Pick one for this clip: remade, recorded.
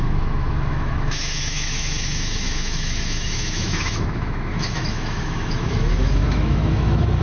remade